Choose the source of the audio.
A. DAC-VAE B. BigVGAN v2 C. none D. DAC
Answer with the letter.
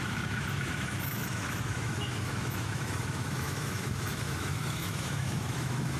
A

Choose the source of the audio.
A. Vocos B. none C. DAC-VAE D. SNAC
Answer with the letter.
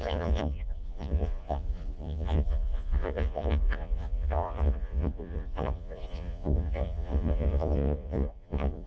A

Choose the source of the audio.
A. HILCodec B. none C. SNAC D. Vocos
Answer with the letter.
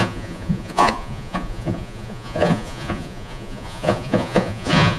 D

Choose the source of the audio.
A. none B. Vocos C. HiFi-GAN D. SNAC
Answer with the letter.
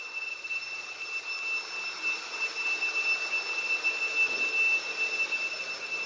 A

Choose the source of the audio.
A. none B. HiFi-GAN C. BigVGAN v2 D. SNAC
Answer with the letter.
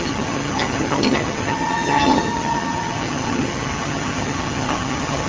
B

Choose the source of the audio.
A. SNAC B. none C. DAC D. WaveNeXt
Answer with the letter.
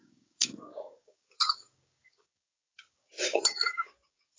C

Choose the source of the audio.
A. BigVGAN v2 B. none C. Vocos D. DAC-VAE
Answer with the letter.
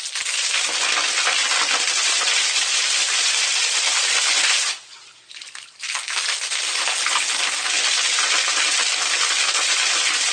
B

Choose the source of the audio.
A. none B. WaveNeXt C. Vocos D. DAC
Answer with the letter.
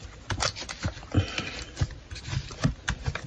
A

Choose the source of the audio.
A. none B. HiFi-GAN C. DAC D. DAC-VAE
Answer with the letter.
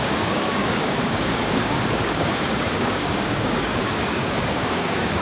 C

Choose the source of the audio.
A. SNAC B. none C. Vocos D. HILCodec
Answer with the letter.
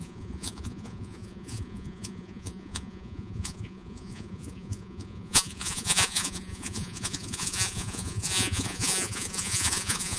C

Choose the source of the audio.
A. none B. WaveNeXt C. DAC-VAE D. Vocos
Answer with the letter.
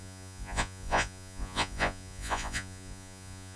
D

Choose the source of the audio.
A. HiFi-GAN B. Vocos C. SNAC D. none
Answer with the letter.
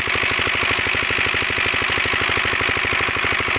D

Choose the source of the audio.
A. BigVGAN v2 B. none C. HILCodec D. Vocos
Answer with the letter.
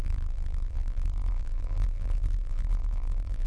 A